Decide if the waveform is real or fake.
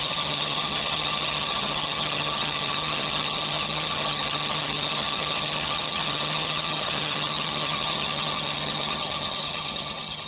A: fake